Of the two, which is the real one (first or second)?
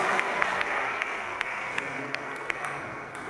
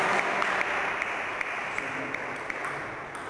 second